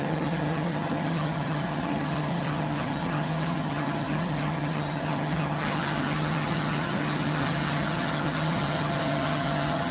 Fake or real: fake